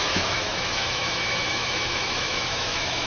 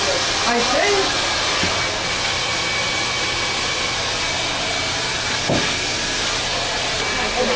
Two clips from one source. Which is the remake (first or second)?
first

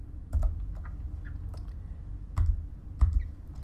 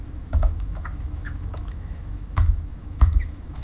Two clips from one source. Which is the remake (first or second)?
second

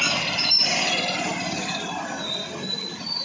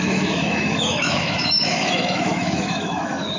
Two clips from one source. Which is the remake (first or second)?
second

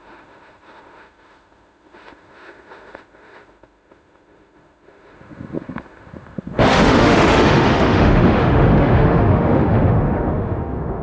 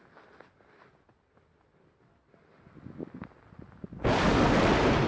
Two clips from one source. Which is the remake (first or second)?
first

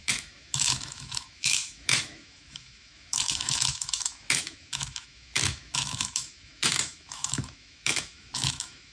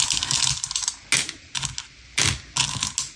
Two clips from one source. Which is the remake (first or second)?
first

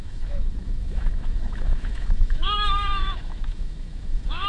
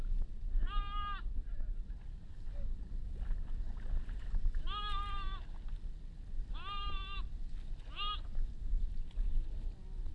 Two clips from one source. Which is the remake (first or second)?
first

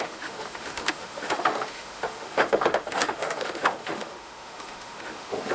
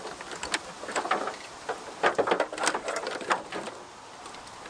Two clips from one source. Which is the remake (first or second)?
first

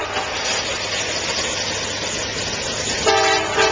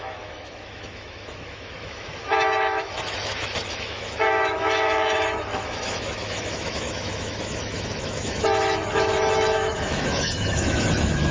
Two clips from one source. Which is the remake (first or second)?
second